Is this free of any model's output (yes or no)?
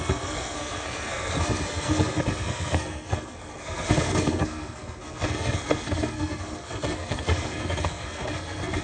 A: no